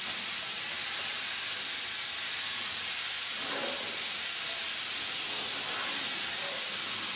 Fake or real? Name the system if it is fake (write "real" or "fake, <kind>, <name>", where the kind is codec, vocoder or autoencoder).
real